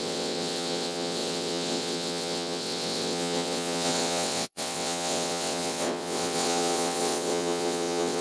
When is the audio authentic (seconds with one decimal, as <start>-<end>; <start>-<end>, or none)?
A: none